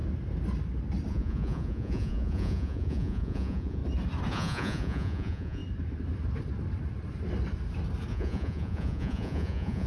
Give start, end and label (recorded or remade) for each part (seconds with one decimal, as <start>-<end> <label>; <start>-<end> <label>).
0.0-1.1 recorded; 1.1-3.8 remade; 3.8-4.3 recorded; 4.3-5.6 remade; 5.6-8.1 recorded; 8.1-9.9 remade